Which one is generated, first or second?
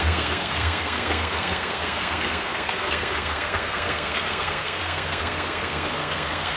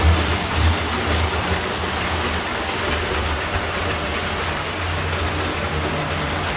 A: first